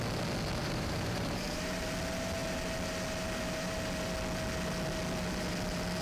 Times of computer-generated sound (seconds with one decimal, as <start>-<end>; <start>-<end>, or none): 0.6-1.8